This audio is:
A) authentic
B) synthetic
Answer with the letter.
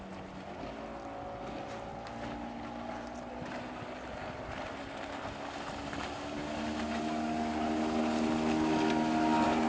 A